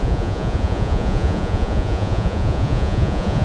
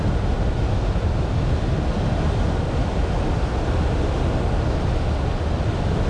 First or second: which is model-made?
first